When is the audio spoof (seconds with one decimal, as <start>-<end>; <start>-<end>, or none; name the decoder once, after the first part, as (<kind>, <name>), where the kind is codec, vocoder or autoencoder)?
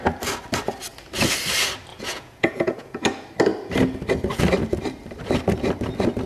1.9-3.0 (vocoder, Vocos)